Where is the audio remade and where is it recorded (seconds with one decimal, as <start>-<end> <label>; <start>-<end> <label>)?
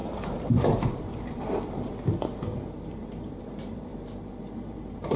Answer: 0.0-3.9 remade; 3.9-4.6 recorded; 4.6-5.2 remade